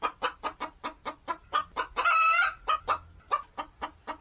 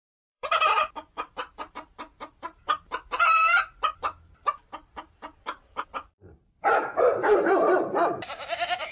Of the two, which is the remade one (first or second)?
second